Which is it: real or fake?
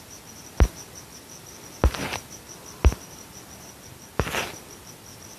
real